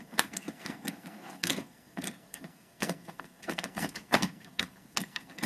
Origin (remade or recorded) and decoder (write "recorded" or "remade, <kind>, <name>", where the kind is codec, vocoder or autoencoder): remade, codec, SNAC